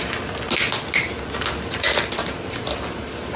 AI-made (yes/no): no